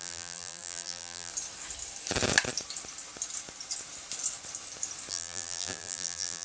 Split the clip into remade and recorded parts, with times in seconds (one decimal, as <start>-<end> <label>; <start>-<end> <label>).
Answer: 0.0-1.3 remade; 1.3-5.1 recorded; 5.1-6.4 remade